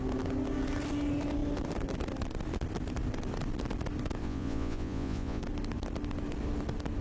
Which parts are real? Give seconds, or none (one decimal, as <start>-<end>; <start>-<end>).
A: 0.0-4.2; 5.4-7.0